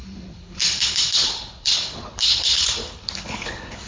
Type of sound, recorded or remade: remade